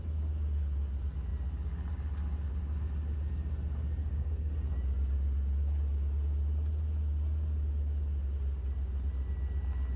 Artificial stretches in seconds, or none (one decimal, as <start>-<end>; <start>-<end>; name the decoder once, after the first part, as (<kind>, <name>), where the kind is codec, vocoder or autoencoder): 4.0-4.5 (codec, SNAC)